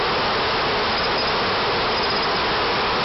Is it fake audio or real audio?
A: real